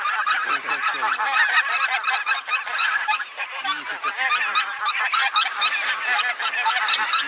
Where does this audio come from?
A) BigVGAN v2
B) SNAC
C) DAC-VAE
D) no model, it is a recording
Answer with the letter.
D